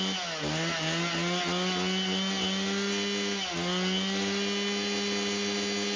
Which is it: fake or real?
real